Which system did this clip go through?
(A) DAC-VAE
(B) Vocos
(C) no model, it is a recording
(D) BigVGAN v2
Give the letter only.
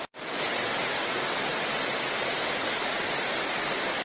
D